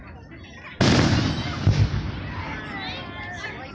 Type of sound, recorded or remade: recorded